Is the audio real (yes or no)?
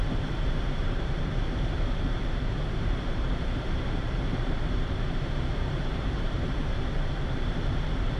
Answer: no